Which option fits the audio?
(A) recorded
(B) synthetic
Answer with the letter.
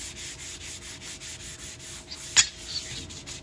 A